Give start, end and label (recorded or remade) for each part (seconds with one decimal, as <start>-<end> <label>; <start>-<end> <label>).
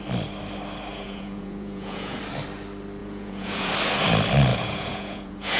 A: 0.0-0.9 recorded; 0.9-2.2 remade; 2.2-3.0 recorded; 3.0-3.7 remade; 3.7-4.5 recorded; 4.5-5.6 remade